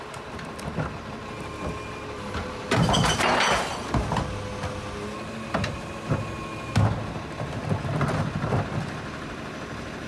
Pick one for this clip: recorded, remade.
recorded